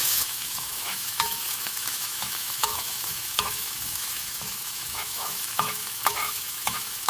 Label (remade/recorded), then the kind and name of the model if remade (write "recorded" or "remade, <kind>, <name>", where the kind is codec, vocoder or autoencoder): remade, autoencoder, DAC-VAE